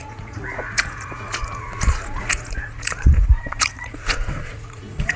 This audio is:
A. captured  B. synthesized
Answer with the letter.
B